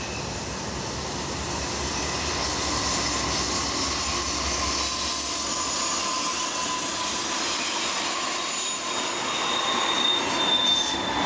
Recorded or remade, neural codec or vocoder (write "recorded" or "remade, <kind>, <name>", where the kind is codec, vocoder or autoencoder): recorded